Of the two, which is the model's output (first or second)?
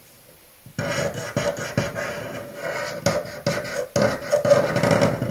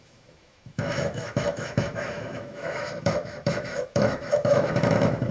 second